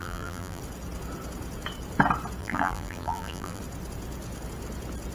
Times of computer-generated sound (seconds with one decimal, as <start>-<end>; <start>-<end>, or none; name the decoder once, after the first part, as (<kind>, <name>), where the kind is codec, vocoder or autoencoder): 0.0-0.6 (vocoder, BigVGAN v2); 2.4-3.6